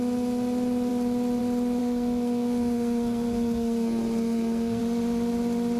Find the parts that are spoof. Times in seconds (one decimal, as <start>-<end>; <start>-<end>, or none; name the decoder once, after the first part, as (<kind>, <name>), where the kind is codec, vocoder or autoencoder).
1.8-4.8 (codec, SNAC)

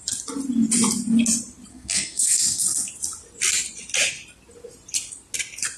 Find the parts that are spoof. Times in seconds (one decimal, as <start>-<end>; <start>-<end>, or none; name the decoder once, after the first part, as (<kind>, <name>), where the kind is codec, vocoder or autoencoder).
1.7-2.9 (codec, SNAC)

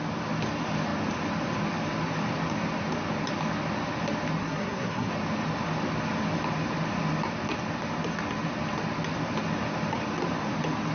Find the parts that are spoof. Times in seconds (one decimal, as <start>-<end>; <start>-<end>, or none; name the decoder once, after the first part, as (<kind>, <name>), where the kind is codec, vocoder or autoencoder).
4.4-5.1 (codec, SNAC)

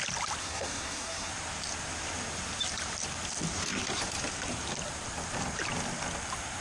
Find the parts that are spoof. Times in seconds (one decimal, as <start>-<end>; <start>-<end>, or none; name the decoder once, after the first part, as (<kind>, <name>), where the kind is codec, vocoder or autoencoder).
0.4-1.3 (codec, SNAC)

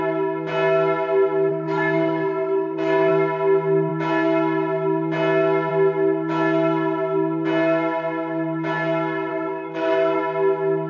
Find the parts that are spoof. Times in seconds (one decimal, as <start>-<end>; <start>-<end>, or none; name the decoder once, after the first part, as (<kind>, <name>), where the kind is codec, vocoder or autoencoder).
1.5-3.1 (codec, SNAC); 9.3-10.2

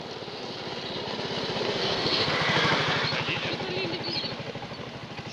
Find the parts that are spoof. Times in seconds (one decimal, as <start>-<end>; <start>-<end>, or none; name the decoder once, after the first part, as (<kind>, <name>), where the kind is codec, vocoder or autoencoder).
1.8-2.3 (codec, SNAC)